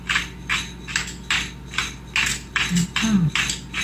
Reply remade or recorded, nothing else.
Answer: recorded